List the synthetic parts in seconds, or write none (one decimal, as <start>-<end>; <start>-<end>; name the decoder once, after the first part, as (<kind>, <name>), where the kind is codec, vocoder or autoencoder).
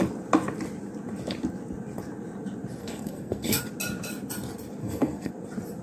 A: 2.8-3.6 (codec, SNAC); 4.8-5.3